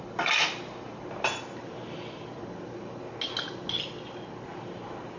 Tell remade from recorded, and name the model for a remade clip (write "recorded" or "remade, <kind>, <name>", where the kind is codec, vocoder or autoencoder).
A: recorded